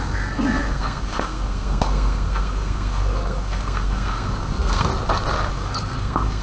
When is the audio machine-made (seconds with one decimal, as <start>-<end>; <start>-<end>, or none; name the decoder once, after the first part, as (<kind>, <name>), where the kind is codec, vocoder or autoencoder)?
0.0-4.9 (codec, SNAC); 5.5-6.4